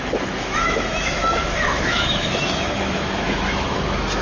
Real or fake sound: fake